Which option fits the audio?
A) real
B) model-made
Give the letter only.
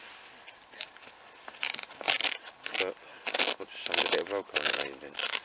A